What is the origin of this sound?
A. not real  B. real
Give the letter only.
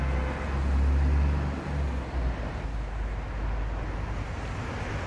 B